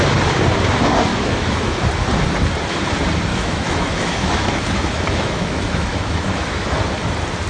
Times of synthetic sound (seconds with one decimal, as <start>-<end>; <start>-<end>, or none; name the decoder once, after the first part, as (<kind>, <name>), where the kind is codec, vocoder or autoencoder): 1.1-1.8 (autoencoder, DAC-VAE); 3.3-6.8